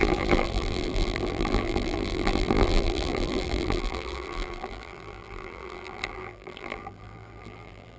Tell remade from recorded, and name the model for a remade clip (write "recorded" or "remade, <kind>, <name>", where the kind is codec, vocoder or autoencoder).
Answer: remade, vocoder, BigVGAN v2